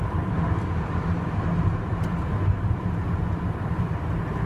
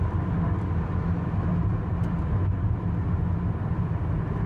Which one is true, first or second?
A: second